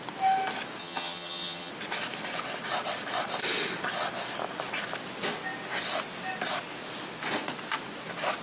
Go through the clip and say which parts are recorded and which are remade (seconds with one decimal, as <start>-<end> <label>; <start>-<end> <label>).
0.0-0.8 recorded; 0.8-1.7 remade; 1.7-8.4 recorded